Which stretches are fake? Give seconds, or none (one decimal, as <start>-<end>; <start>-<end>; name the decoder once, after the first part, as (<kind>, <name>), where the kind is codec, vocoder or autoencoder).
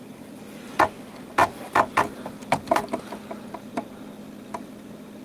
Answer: none